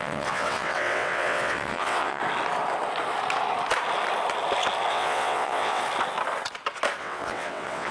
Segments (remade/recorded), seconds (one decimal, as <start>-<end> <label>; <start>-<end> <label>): 0.0-2.2 remade; 2.2-4.9 recorded; 4.9-5.8 remade; 5.8-7.0 recorded; 7.0-7.9 remade